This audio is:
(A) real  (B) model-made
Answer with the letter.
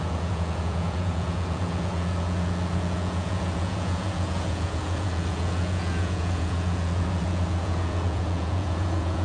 B